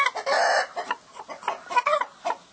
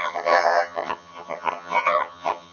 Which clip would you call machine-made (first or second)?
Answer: second